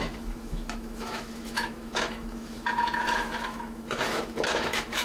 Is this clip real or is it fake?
fake